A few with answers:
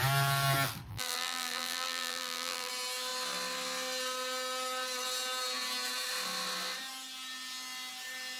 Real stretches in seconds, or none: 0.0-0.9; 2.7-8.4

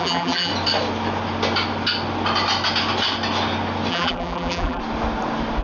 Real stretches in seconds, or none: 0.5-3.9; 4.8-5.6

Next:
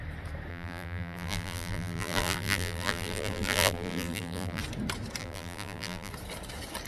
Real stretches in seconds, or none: 0.0-0.5; 4.6-5.2; 6.1-6.9

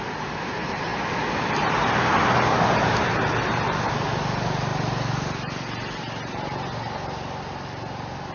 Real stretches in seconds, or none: 0.0-8.3